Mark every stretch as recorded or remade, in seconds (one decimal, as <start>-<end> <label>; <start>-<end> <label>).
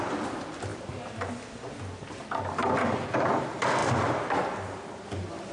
0.0-5.5 recorded